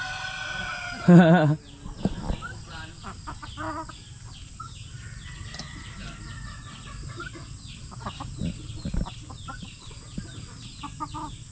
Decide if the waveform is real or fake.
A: real